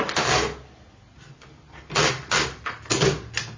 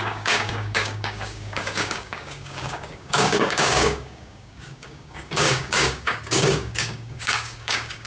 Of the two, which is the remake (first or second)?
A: second